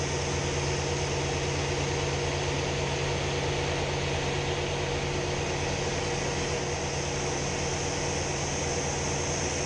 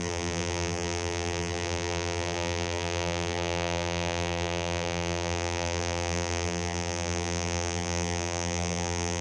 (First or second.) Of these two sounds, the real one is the first